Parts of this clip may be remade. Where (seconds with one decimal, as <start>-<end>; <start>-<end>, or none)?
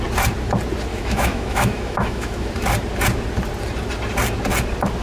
0.9-2.5